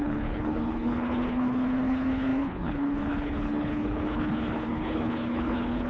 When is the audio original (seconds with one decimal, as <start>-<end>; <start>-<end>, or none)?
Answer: none